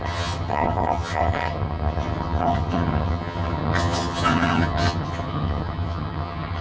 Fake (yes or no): yes